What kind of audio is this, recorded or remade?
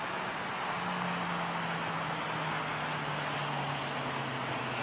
recorded